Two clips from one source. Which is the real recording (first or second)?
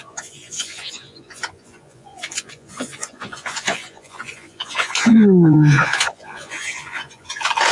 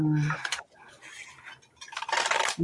second